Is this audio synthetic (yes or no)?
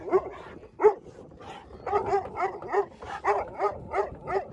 no